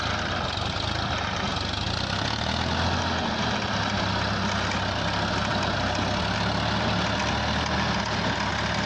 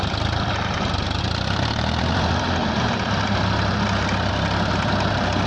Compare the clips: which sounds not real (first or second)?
second